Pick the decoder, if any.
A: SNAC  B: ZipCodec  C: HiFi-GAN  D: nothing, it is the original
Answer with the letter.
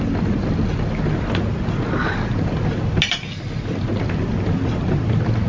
D